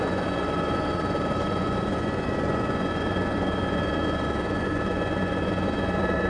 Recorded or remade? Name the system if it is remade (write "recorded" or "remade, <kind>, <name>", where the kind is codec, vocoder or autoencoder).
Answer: remade, vocoder, Vocos